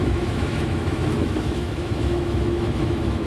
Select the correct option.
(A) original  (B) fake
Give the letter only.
B